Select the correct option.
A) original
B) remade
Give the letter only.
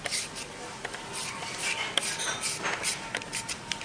A